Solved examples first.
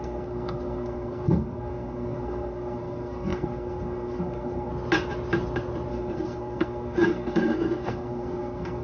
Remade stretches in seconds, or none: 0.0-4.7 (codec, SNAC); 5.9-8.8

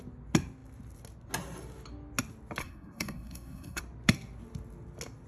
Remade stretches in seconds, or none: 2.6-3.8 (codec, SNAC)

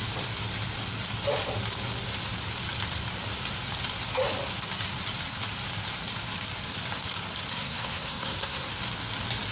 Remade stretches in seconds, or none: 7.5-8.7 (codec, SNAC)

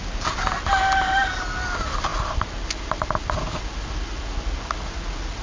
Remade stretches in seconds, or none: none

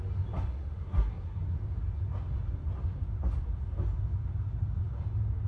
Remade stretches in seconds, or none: 0.5-1.4 (codec, SNAC)